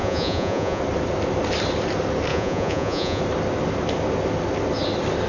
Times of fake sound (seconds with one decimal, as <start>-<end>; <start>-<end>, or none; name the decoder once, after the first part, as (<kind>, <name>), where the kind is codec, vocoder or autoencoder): 0.0-0.8 (vocoder, Vocos); 2.3-3.2